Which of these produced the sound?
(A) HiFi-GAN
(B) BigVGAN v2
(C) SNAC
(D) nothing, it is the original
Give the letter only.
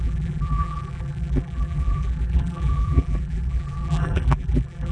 B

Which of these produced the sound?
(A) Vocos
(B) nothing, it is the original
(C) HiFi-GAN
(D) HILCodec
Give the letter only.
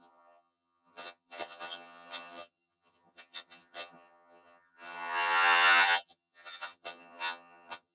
C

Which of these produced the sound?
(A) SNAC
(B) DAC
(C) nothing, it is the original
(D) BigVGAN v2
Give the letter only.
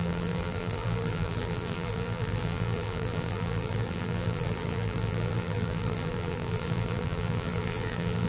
D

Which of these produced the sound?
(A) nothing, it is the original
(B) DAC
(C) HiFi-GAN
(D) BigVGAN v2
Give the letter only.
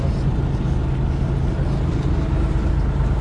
A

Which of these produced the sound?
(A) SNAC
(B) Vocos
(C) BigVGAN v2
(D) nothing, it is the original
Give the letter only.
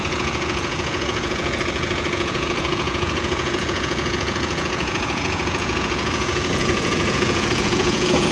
B